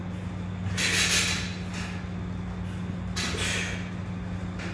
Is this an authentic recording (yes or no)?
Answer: yes